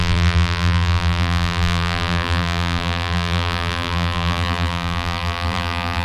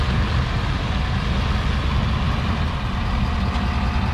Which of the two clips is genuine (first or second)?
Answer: second